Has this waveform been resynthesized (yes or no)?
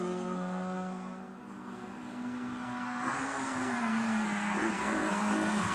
yes